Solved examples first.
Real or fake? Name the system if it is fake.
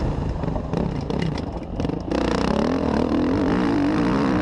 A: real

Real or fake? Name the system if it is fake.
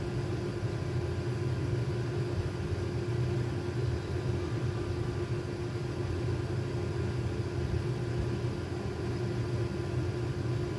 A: real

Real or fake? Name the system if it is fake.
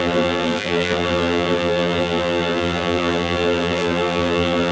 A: fake, vocoder, BigVGAN v2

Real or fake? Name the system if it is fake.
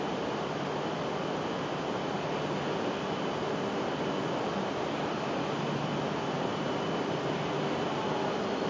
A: real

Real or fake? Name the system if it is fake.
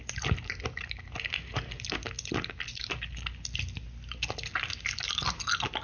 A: real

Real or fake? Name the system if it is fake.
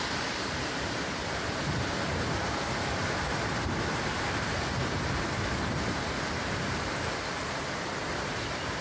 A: fake, vocoder, BigVGAN v2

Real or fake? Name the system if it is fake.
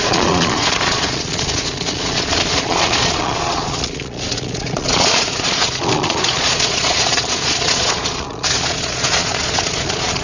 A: fake, vocoder, Vocos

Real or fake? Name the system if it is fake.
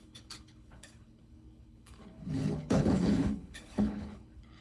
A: fake, codec, HILCodec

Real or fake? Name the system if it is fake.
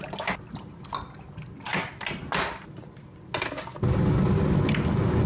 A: real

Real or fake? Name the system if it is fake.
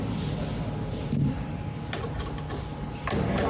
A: real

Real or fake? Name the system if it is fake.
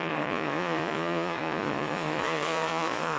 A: fake, vocoder, Vocos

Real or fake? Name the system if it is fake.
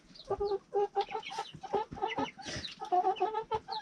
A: real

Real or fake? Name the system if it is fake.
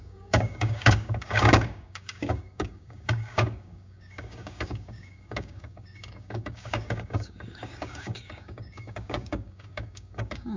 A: fake, codec, DAC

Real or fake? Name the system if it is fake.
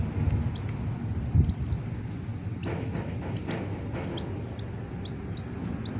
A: real